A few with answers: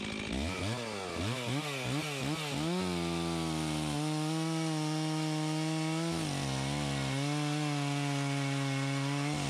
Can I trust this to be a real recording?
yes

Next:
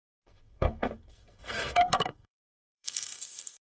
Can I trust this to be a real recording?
no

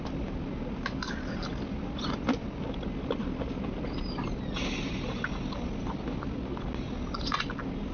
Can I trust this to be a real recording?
yes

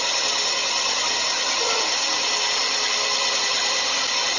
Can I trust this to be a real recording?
yes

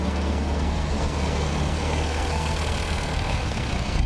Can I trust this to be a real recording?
no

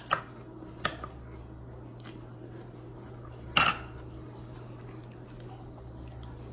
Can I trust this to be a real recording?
yes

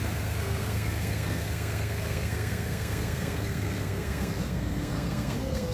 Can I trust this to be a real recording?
no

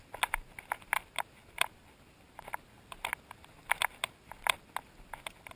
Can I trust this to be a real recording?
yes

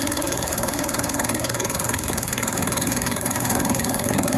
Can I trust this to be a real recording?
no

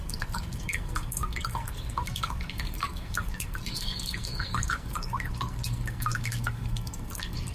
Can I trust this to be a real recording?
no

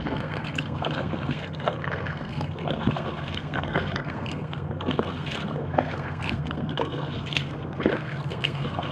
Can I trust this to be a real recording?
no